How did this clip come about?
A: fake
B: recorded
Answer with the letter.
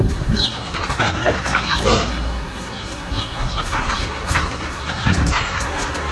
A